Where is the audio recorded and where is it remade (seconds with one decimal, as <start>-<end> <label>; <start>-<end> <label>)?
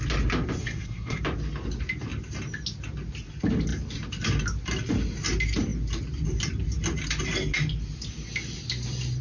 0.0-0.6 recorded; 0.6-1.2 remade; 1.2-9.2 recorded